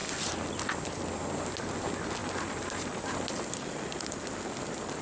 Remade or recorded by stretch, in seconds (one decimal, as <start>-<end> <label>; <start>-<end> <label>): 0.0-5.0 recorded